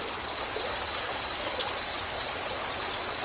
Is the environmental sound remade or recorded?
recorded